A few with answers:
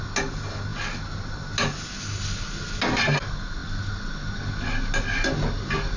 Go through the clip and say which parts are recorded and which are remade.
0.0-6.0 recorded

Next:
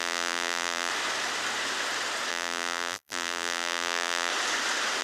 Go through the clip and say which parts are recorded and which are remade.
0.0-0.9 remade; 0.9-2.3 recorded; 2.3-4.3 remade; 4.3-5.0 recorded

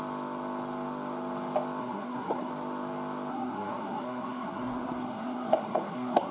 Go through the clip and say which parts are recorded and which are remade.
0.0-1.8 recorded; 1.8-2.5 remade; 2.5-3.3 recorded; 3.3-6.3 remade

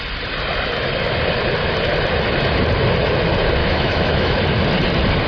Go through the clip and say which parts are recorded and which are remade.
0.0-3.6 recorded; 3.6-4.4 remade; 4.4-5.3 recorded

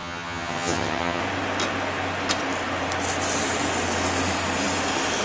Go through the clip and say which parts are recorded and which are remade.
0.0-1.2 remade; 1.2-5.2 recorded